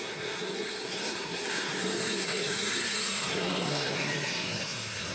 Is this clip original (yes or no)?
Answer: no